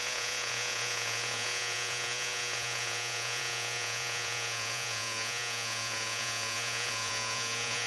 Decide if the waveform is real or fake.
fake